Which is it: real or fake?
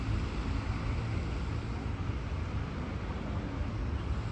real